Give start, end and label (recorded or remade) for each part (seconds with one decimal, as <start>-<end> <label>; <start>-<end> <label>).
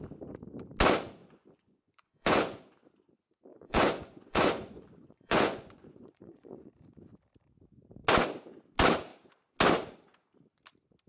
0.0-1.2 recorded; 1.2-2.7 remade; 2.7-3.5 recorded; 3.5-6.7 remade; 6.7-11.1 recorded